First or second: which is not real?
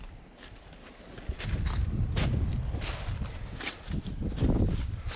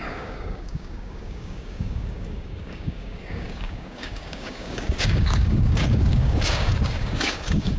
second